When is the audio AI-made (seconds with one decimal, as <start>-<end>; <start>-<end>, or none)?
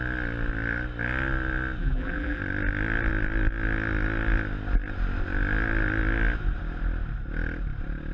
1.8-2.4